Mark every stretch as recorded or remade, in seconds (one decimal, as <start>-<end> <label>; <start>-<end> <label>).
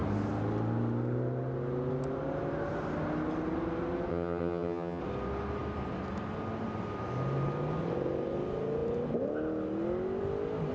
0.0-4.1 recorded; 4.1-5.0 remade; 5.0-10.7 recorded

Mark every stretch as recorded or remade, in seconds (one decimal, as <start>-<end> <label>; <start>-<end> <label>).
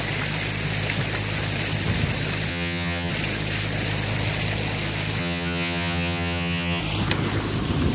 0.0-2.5 recorded; 2.5-3.1 remade; 3.1-5.2 recorded; 5.2-6.8 remade; 6.8-7.9 recorded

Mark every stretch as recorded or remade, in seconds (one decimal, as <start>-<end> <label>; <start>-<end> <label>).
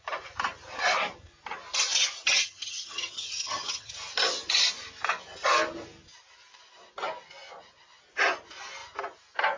0.0-2.4 recorded; 2.4-3.9 remade; 3.9-9.6 recorded